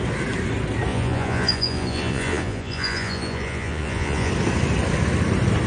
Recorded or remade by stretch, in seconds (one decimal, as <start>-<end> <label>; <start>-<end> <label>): 0.0-0.9 recorded; 0.9-4.3 remade; 4.3-5.7 recorded

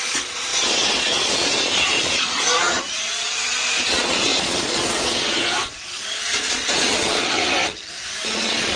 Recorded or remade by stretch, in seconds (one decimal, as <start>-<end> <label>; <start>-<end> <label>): 0.0-7.4 remade; 7.4-7.9 recorded; 7.9-8.8 remade

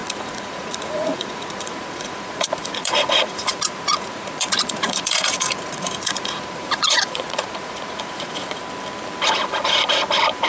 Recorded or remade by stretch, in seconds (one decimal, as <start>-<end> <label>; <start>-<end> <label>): 0.0-8.6 remade; 8.6-10.5 recorded

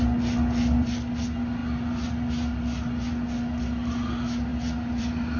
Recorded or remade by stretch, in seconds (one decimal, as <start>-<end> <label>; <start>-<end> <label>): 0.0-5.4 recorded

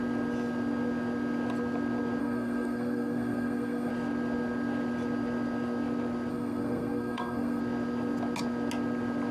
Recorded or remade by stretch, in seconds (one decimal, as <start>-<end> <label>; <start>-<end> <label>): 0.0-2.2 recorded; 2.2-3.9 remade; 3.9-6.3 recorded; 6.3-7.6 remade; 7.6-9.3 recorded

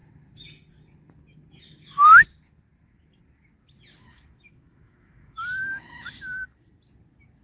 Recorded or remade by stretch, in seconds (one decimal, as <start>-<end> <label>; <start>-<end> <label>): 0.0-4.1 recorded; 4.1-6.2 remade; 6.2-7.4 recorded

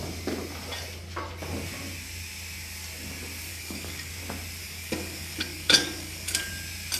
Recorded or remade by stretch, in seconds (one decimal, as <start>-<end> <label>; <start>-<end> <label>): 0.0-3.5 recorded; 3.5-4.1 remade; 4.1-4.6 recorded; 4.6-6.5 remade; 6.5-7.0 recorded